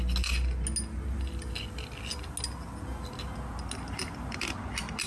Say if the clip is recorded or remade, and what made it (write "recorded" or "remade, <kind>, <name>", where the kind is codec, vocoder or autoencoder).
recorded